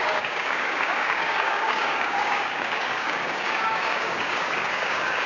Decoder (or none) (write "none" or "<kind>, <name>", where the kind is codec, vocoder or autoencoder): codec, DAC